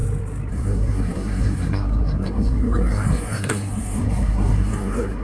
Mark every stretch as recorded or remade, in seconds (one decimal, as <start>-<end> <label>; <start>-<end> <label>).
0.0-0.5 recorded; 0.5-5.2 remade